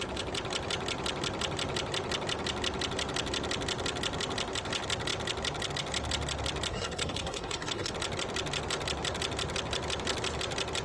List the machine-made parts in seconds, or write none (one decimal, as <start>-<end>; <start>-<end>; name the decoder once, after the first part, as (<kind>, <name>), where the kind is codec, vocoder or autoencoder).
6.7-7.9 (codec, SNAC)